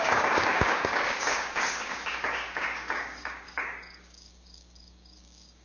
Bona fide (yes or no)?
no